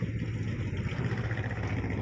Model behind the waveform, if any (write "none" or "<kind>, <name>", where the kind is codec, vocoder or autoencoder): none